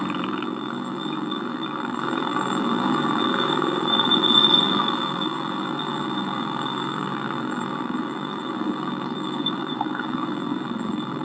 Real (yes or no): no